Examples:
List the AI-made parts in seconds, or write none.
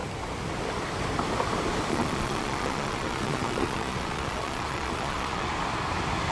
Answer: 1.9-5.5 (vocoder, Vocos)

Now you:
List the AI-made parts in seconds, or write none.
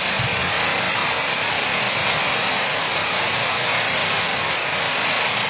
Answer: none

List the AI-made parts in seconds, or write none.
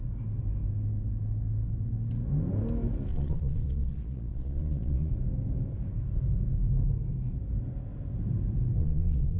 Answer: 3.1-5.1 (vocoder, Vocos); 8.8-9.4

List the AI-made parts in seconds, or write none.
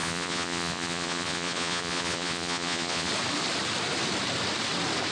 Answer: 0.0-3.1 (vocoder, Vocos)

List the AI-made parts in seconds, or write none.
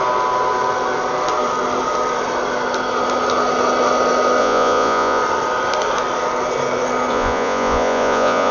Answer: 4.4-5.2 (vocoder, Vocos); 7.1-8.5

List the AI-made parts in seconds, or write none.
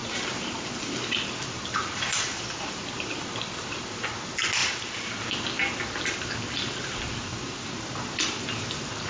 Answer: none